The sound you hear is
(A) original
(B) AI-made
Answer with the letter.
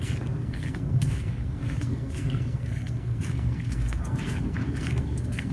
B